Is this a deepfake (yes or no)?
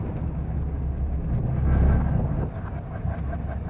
no